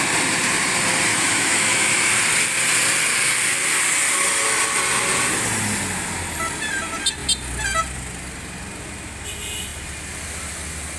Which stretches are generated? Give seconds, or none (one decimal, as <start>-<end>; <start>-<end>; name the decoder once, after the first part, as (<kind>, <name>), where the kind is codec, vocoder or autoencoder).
1.1-2.1 (autoencoder, DAC-VAE)